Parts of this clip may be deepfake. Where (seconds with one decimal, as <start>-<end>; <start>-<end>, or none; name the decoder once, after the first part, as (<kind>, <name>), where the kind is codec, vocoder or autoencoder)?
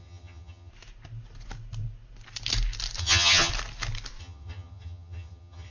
0.0-0.7 (vocoder, HiFi-GAN); 3.0-3.5; 4.2-5.7